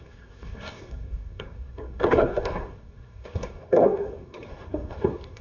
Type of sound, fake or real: fake